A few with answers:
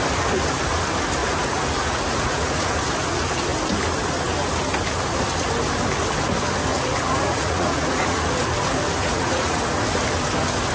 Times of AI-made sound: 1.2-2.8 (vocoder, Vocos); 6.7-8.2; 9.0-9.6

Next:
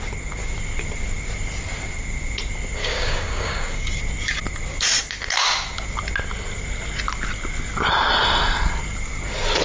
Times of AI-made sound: 2.8-4.0 (codec, DAC)

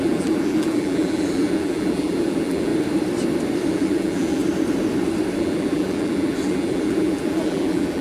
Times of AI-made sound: 0.0-2.7 (vocoder, BigVGAN v2); 3.7-4.4; 5.4-8.0

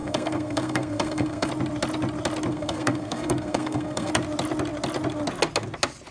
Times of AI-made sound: 0.0-1.5 (codec, SNAC); 2.5-4.1

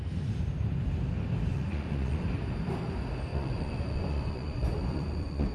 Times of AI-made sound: 1.5-2.2 (vocoder, Vocos); 3.3-5.5

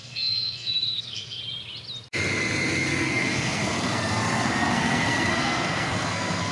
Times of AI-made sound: 0.0-1.4 (codec, SNAC); 2.9-6.5

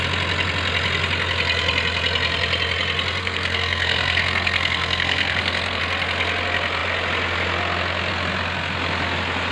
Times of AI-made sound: 3.2-5.8 (codec, SNAC)